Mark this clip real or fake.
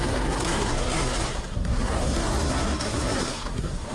fake